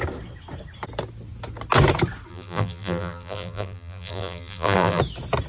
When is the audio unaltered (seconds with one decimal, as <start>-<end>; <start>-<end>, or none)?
0.0-2.3; 5.0-5.5